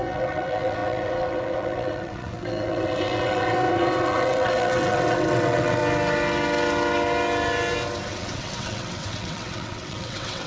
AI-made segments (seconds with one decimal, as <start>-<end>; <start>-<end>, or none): 0.0-5.8; 8.1-10.5